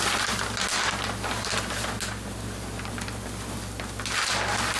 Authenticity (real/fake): real